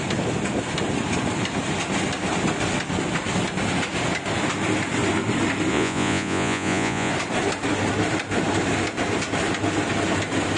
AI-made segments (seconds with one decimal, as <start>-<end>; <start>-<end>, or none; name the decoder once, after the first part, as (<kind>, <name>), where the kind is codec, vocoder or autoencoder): 5.7-7.1 (vocoder, Vocos)